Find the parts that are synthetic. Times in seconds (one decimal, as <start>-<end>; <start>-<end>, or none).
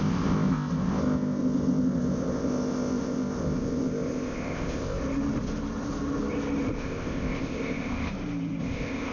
0.0-5.0; 6.8-8.1; 8.6-9.1